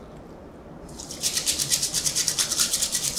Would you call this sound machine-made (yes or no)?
no